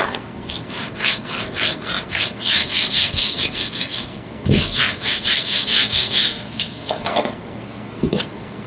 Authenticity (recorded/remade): remade